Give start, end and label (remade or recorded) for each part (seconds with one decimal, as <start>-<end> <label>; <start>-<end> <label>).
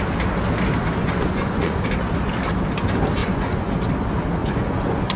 0.0-1.0 recorded; 1.0-1.8 remade; 1.8-3.2 recorded; 3.2-3.7 remade; 3.7-4.4 recorded; 4.4-5.2 remade